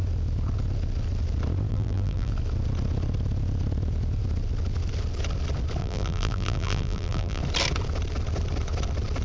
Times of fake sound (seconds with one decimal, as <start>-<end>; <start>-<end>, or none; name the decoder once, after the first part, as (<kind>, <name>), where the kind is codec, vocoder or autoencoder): 1.7-2.3 (vocoder, BigVGAN v2); 5.8-7.4